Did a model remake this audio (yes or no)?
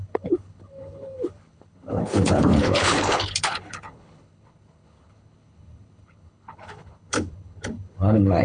yes